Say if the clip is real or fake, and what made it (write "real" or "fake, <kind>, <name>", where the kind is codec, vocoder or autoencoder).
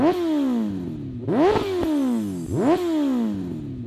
real